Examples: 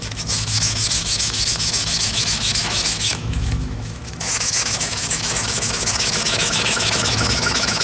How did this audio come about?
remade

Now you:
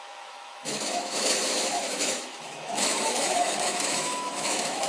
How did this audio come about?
remade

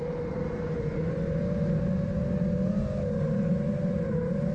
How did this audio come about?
recorded